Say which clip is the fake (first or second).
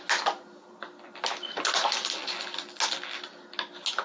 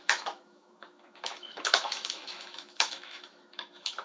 second